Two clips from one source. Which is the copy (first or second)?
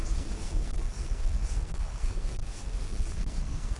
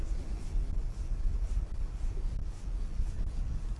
first